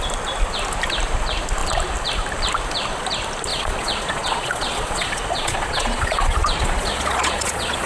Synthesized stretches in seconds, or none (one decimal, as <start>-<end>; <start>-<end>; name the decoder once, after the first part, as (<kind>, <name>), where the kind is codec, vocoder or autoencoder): 3.5-7.9 (vocoder, Vocos)